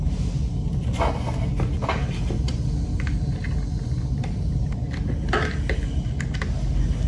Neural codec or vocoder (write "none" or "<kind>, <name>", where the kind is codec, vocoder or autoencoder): none